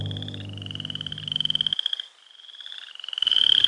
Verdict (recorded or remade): recorded